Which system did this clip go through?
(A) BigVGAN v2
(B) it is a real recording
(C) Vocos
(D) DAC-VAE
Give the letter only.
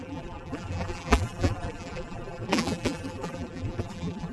A